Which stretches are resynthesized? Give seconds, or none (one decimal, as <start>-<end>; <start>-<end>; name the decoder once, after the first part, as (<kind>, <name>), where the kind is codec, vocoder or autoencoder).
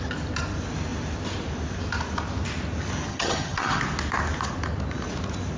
3.1-3.8 (vocoder, HiFi-GAN)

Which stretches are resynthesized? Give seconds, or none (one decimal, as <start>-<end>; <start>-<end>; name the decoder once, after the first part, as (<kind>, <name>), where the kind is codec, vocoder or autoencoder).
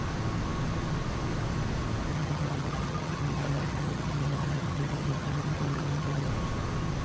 2.1-6.3 (vocoder, HiFi-GAN)